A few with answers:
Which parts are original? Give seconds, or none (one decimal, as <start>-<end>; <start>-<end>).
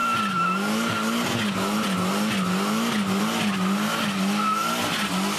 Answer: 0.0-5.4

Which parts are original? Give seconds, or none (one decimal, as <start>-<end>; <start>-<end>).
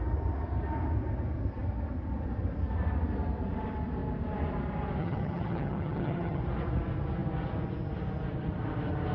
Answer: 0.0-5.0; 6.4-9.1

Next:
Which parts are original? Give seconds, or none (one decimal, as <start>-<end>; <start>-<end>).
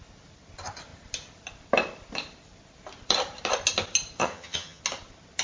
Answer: 0.0-4.2; 4.8-5.4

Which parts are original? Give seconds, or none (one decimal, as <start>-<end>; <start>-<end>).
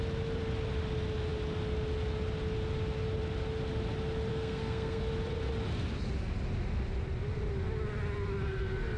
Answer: 0.0-4.3; 5.0-9.0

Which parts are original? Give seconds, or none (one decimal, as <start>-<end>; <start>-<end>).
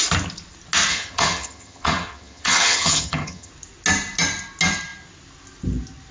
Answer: 0.0-0.9; 3.5-6.1